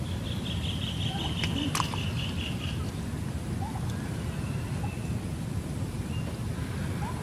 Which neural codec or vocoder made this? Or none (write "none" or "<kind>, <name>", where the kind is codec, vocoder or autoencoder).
none